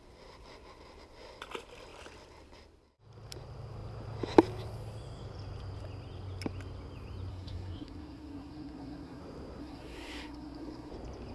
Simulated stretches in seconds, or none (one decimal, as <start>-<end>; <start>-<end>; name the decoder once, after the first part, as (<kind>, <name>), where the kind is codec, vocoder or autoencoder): 7.3-9.2 (codec, SNAC); 9.6-10.9